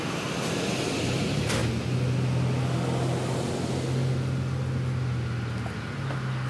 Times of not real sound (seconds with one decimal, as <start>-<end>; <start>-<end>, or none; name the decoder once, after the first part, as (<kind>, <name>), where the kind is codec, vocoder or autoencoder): none

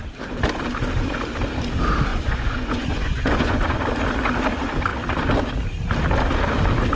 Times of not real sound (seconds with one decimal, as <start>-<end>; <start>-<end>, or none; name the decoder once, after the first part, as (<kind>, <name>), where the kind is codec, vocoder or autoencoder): 2.1-3.8 (vocoder, Vocos)

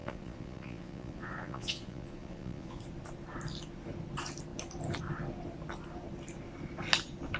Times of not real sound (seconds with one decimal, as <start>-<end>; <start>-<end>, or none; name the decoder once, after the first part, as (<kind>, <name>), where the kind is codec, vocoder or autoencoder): 0.0-2.8 (vocoder, Vocos)

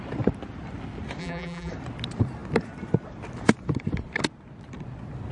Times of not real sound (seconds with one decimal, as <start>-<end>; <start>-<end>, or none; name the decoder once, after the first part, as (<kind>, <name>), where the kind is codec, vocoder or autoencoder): 1.2-1.7 (vocoder, BigVGAN v2)